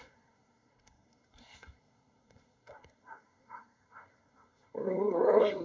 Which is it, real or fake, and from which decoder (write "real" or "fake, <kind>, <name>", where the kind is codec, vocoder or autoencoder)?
fake, codec, SNAC